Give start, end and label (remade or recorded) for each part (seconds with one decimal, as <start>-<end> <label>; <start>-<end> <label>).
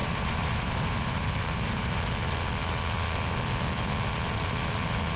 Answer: 0.0-1.9 remade; 1.9-5.2 recorded